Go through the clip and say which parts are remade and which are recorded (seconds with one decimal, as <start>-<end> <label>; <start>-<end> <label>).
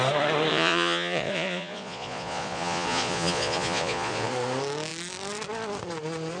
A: 0.0-0.5 recorded; 0.5-4.3 remade; 4.3-6.4 recorded